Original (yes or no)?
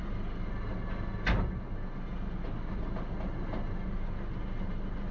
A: yes